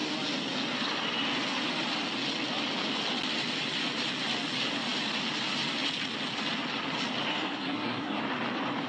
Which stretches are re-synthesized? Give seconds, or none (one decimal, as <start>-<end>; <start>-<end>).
7.3-8.2